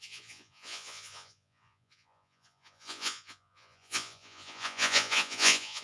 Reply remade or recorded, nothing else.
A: remade